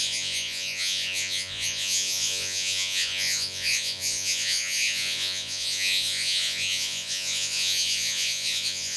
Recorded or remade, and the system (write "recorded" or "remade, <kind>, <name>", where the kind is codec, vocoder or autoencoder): remade, vocoder, Vocos